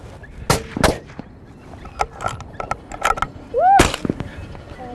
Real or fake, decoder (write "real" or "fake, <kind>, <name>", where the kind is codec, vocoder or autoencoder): real